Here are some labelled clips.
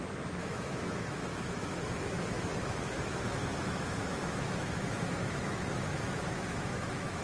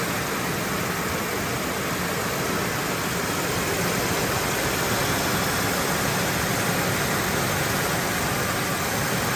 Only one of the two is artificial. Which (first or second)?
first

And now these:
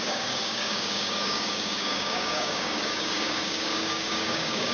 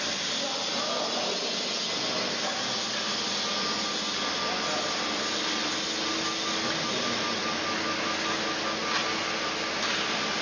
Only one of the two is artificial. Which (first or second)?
first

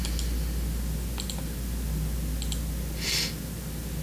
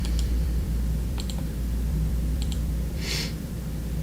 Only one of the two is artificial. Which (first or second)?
second